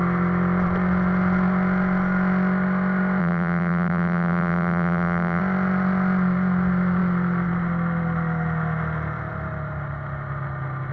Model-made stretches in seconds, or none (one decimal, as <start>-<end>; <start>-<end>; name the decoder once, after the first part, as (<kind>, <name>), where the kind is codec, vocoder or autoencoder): 3.2-5.4 (vocoder, BigVGAN v2)